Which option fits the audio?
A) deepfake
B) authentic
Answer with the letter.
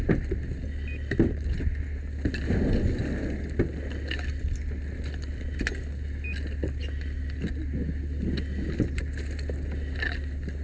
B